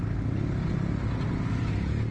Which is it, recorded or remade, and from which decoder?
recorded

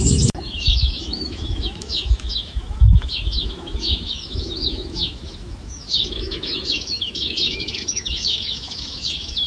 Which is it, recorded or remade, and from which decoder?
remade, autoencoder, DAC-VAE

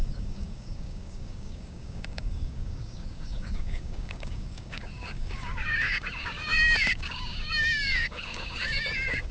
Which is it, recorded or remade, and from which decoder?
remade, codec, DAC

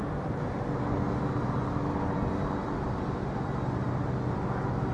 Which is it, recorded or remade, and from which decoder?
recorded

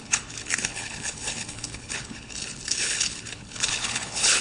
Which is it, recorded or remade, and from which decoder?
remade, codec, HILCodec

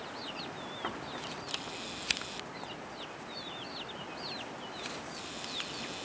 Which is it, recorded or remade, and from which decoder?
recorded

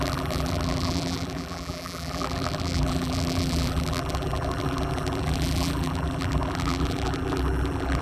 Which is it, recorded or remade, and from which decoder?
remade, vocoder, BigVGAN v2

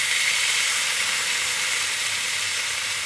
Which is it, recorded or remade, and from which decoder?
remade, vocoder, BigVGAN v2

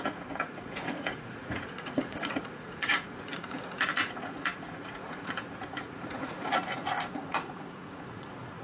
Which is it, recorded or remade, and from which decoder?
remade, vocoder, Vocos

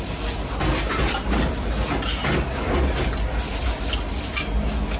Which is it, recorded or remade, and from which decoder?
recorded